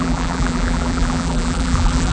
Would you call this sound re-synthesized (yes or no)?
yes